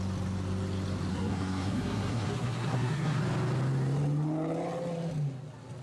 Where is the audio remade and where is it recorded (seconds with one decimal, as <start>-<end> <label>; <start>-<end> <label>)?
0.0-1.1 recorded; 1.1-3.2 remade; 3.2-5.8 recorded